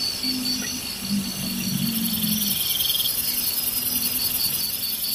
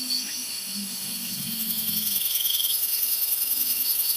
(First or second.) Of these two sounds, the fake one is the second